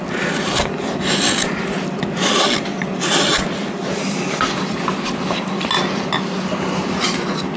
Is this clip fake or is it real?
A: real